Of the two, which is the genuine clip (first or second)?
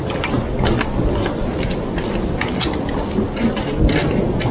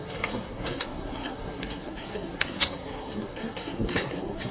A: first